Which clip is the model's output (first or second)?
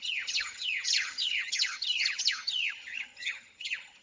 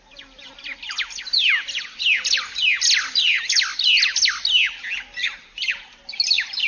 first